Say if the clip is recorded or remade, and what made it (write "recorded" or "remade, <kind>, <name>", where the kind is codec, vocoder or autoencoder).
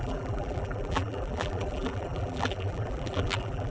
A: remade, vocoder, BigVGAN v2